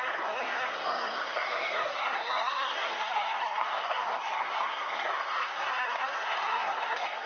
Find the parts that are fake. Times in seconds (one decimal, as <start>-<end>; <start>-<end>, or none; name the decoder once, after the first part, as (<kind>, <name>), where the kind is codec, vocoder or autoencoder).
0.0-7.3 (codec, SNAC)